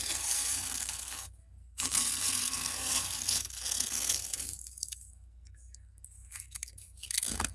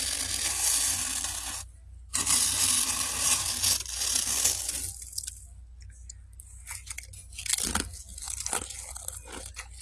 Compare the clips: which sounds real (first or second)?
second